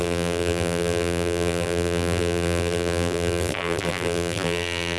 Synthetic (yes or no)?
yes